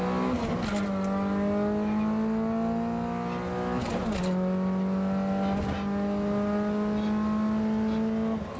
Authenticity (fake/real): real